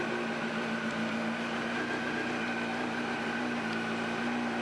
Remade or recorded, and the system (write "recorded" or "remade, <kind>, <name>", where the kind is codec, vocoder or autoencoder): recorded